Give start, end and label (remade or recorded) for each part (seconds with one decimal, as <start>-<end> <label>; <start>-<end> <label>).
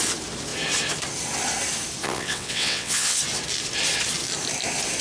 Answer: 0.0-2.0 recorded; 2.0-3.2 remade; 3.2-5.0 recorded